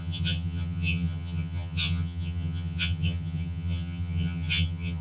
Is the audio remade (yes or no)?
yes